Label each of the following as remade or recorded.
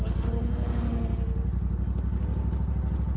recorded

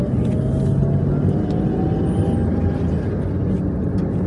recorded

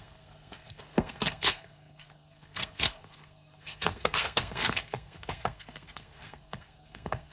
remade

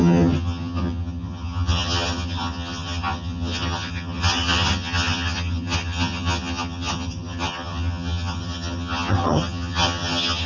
remade